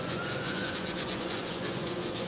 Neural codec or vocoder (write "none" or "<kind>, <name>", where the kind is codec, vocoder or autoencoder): vocoder, Vocos